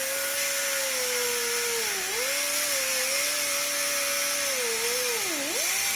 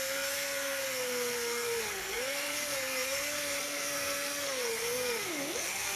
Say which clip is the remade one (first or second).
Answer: second